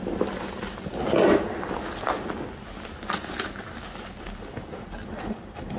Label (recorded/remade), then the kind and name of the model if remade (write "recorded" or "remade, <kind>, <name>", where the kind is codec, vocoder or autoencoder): recorded